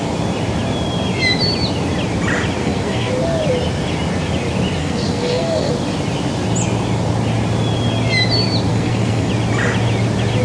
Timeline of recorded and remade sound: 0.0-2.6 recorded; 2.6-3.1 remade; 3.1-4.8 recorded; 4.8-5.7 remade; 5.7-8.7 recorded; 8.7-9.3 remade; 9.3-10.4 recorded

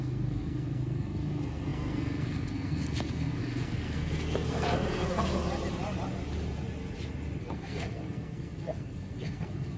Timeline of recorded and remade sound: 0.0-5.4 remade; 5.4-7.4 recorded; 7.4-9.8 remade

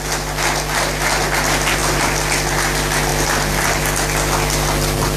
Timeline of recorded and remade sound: 0.0-5.2 recorded

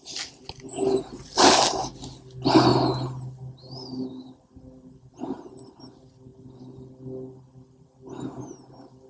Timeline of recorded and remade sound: 0.0-9.1 recorded

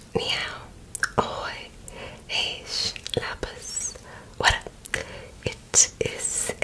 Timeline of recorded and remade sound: 0.0-5.0 recorded; 5.0-5.9 remade; 5.9-6.6 recorded

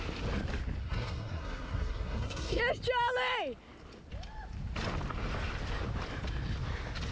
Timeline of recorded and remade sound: 0.0-0.8 recorded; 0.8-2.6 remade; 2.6-7.1 recorded